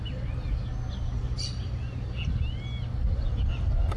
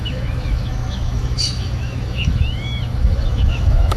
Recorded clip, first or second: first